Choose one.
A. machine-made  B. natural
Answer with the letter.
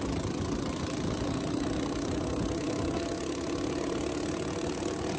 B